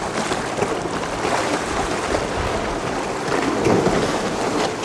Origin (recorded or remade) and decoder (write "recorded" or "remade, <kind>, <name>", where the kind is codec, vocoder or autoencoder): recorded